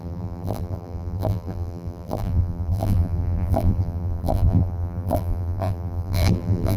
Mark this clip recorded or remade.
remade